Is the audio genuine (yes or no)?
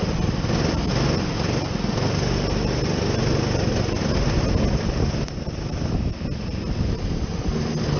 yes